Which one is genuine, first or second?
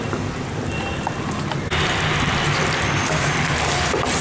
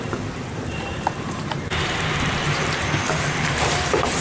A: first